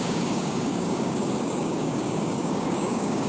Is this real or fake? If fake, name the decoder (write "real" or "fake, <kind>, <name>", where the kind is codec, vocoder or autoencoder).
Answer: fake, codec, DAC